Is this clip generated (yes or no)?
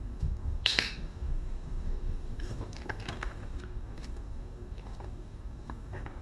yes